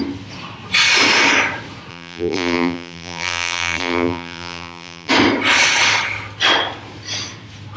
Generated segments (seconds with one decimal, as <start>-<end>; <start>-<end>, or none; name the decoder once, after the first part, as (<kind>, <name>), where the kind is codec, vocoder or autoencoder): 1.9-5.1 (vocoder, BigVGAN v2)